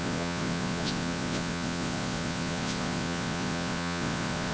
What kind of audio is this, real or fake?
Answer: fake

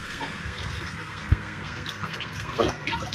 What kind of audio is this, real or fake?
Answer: fake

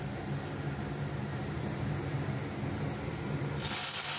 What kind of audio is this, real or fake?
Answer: real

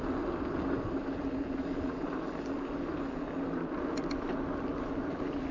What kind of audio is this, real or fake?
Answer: real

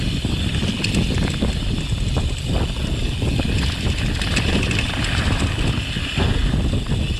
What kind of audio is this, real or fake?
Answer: real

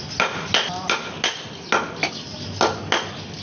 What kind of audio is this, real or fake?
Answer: real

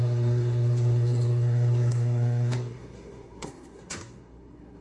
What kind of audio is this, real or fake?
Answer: fake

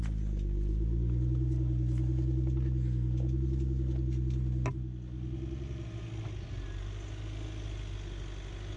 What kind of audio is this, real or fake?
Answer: real